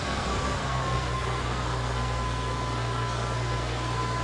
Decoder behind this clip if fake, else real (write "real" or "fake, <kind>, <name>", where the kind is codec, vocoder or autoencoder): fake, codec, SNAC